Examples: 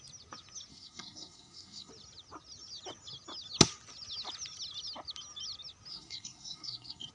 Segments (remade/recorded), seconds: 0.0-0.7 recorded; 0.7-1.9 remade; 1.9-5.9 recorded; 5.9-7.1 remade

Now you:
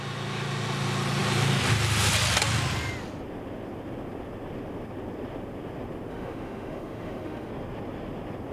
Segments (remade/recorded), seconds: 0.0-6.1 recorded; 6.1-7.5 remade; 7.5-8.5 recorded

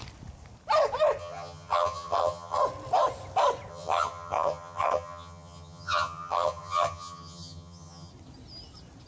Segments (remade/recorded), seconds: 0.0-1.2 recorded; 1.2-2.6 remade; 2.6-3.7 recorded; 3.7-8.1 remade; 8.1-9.1 recorded

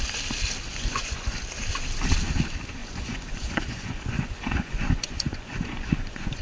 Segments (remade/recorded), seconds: 0.0-0.7 recorded; 0.7-1.4 remade; 1.4-2.8 recorded; 2.8-6.4 remade